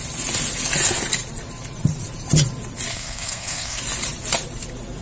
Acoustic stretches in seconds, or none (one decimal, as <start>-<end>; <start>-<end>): 0.0-2.9; 3.8-5.0